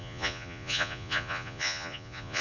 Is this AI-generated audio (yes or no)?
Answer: yes